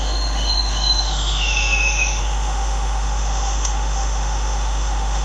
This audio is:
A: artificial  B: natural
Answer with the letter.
A